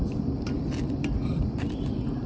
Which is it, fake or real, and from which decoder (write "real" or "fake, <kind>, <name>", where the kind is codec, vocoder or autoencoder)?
real